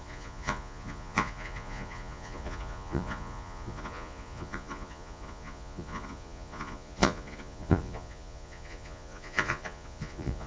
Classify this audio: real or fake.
fake